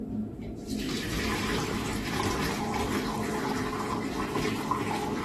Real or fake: fake